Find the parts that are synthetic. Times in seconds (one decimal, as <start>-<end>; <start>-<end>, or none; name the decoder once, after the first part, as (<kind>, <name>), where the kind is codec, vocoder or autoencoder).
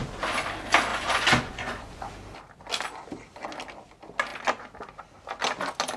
0.9-2.1 (vocoder, Vocos)